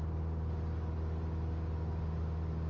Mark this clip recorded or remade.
recorded